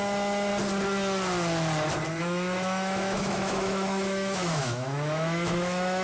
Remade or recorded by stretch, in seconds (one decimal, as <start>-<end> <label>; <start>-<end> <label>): 0.0-0.5 remade; 0.5-2.2 recorded; 2.2-6.0 remade